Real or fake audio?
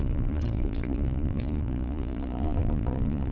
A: fake